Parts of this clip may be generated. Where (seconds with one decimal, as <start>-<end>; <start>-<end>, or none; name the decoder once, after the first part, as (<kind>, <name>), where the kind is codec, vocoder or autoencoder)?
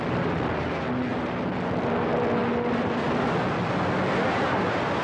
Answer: none